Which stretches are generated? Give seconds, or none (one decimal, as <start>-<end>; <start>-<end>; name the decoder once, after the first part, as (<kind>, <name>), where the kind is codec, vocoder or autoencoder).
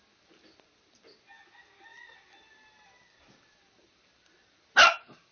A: 1.9-5.3 (vocoder, BigVGAN v2)